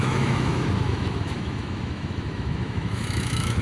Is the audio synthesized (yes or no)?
yes